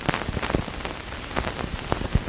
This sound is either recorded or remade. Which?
recorded